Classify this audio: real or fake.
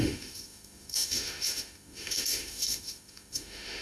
fake